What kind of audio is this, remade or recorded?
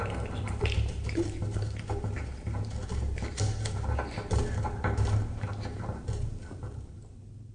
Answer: remade